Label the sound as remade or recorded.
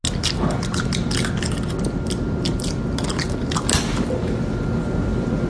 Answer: recorded